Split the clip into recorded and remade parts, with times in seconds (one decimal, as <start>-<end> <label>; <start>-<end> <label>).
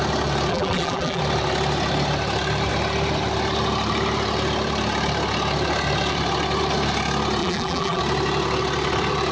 0.0-0.5 recorded; 0.5-1.2 remade; 1.2-7.4 recorded; 7.4-8.0 remade; 8.0-9.3 recorded